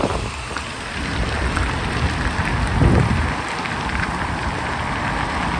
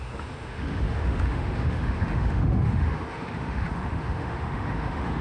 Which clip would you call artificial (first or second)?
second